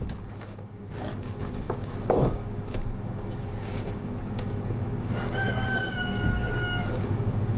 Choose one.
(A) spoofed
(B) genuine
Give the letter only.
A